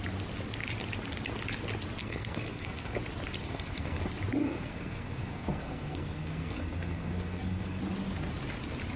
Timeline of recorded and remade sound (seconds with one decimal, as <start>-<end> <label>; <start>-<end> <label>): 0.0-2.0 recorded; 2.0-3.0 remade; 3.0-3.4 recorded; 3.4-4.0 remade; 4.0-4.4 recorded; 4.4-7.8 remade; 7.8-9.0 recorded